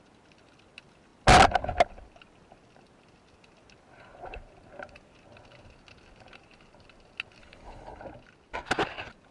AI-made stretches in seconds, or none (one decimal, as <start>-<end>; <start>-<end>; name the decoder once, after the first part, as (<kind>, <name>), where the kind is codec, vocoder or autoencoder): 7.4-8.0 (codec, HILCodec)